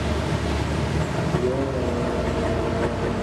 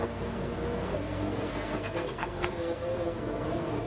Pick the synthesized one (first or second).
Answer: second